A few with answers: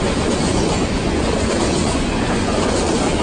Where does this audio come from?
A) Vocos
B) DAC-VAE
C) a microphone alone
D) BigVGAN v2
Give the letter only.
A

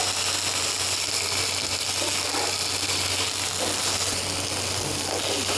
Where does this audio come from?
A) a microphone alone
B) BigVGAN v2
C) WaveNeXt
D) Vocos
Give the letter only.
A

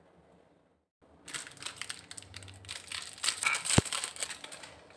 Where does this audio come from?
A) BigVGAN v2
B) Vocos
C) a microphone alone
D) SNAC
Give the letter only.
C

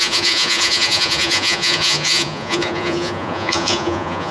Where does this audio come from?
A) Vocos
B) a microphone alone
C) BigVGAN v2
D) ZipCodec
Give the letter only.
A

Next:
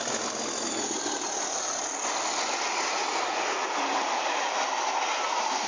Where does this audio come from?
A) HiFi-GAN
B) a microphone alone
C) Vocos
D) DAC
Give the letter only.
B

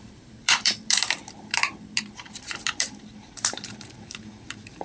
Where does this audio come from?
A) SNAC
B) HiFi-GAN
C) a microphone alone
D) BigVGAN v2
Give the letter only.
D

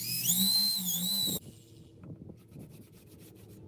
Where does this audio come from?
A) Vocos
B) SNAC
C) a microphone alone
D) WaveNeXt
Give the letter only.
C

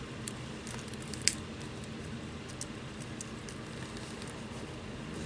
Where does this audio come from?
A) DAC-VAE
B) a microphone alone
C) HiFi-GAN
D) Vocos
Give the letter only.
B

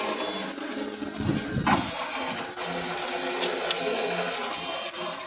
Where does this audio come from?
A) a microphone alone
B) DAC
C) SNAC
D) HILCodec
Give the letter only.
A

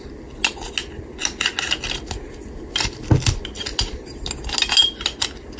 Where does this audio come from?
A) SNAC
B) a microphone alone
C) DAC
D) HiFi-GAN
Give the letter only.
B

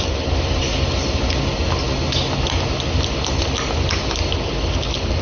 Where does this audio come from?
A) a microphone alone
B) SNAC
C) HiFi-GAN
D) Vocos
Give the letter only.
A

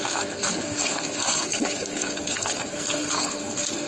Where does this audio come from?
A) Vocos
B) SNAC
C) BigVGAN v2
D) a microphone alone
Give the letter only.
B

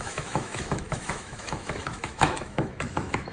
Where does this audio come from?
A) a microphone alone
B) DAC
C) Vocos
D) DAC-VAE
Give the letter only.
D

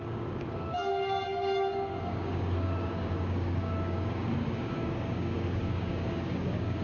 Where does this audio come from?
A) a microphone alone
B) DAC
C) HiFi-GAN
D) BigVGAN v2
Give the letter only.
B